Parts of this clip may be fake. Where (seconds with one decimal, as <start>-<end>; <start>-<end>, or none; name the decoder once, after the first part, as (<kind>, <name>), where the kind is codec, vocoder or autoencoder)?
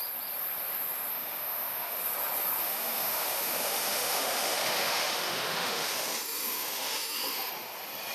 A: 1.1-2.0 (autoencoder, DAC-VAE); 2.6-7.5